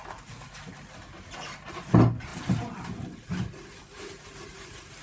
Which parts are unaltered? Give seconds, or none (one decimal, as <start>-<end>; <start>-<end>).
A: 0.0-5.0